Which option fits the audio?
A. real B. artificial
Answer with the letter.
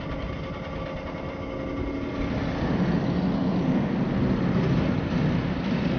A